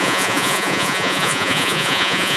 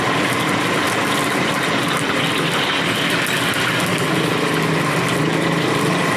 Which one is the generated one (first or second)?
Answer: first